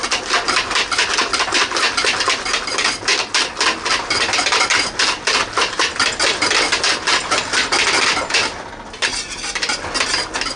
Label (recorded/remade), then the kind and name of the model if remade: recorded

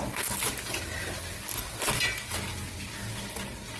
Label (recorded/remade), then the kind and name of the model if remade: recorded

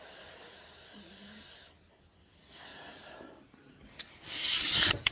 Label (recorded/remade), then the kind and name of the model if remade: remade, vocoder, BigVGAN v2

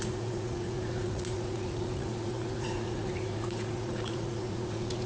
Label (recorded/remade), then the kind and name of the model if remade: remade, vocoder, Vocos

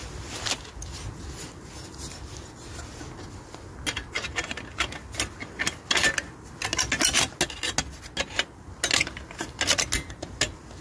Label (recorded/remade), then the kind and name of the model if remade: recorded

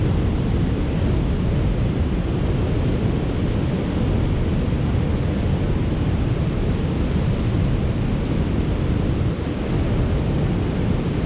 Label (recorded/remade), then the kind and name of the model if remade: recorded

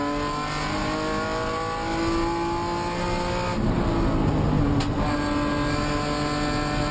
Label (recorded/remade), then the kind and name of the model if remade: recorded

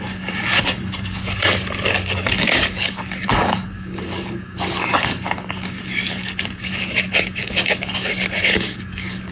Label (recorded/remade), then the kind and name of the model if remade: remade, codec, DAC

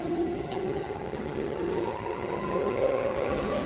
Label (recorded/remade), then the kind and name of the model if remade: remade, vocoder, HiFi-GAN